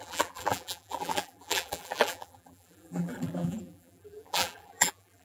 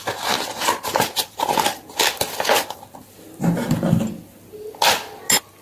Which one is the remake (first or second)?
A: first